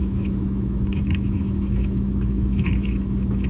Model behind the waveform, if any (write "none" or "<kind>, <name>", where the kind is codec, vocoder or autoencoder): autoencoder, DAC-VAE